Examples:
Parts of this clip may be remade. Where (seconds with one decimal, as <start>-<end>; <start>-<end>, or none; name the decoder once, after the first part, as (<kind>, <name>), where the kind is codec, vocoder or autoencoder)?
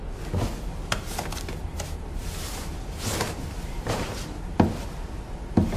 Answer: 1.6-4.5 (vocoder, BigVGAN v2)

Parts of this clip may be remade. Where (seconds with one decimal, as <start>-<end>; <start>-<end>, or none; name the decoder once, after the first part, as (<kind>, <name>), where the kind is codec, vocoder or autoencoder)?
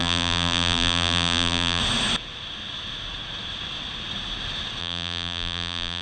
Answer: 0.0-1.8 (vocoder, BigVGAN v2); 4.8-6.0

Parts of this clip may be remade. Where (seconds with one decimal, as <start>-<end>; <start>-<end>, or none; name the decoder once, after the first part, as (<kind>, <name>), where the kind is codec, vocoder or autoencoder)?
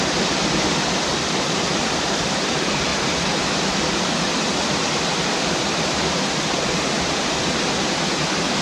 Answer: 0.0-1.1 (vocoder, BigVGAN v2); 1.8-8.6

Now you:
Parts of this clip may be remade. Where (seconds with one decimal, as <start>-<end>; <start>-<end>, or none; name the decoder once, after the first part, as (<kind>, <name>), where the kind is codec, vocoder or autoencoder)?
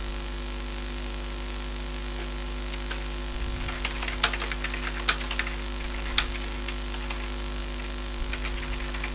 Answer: 7.6-8.3 (vocoder, BigVGAN v2)